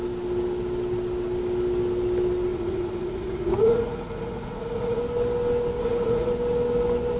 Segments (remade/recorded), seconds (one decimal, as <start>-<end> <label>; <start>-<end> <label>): 0.0-2.5 recorded; 2.5-5.0 remade; 5.0-5.8 recorded; 5.8-6.3 remade; 6.3-7.2 recorded